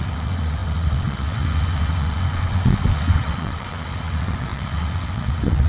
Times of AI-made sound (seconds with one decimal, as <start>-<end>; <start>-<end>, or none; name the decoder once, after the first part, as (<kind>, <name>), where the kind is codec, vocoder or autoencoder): 0.0-5.7 (vocoder, WaveNeXt)